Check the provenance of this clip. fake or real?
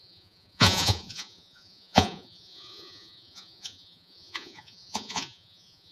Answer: fake